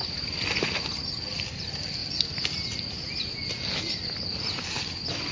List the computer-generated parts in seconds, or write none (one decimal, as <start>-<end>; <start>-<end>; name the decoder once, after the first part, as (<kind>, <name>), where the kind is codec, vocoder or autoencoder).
none